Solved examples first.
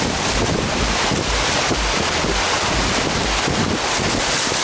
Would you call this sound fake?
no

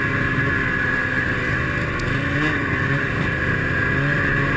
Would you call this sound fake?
no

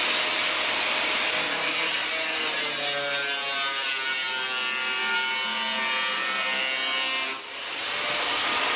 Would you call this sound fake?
no